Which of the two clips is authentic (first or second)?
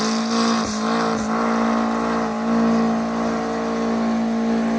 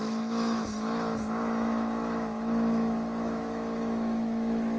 first